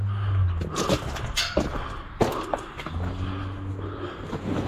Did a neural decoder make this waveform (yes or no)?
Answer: no